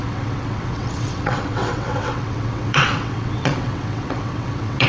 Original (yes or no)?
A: no